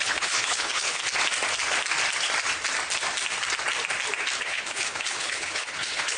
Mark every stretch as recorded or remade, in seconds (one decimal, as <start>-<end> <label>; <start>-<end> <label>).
0.0-1.0 remade; 1.0-4.4 recorded; 4.4-6.2 remade